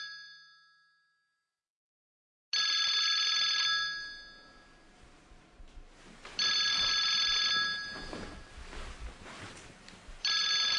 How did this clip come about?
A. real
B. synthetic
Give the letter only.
A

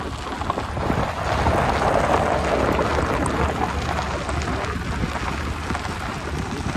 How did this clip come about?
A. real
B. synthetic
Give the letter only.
A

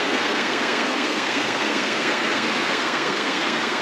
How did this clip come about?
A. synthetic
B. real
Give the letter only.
A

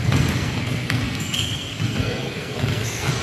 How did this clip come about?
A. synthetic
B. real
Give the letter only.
A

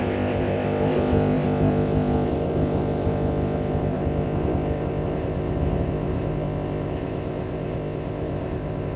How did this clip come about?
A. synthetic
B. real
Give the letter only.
A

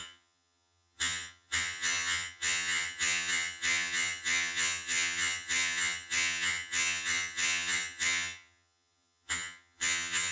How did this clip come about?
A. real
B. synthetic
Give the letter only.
B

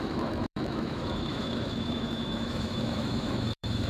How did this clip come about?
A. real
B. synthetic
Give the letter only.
B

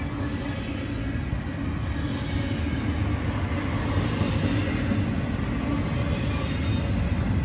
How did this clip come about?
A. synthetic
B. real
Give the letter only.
B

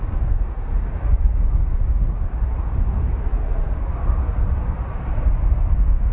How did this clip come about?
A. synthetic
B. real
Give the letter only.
B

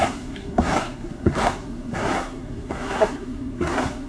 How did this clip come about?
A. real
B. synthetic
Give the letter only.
B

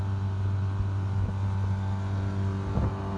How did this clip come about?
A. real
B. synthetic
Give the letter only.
A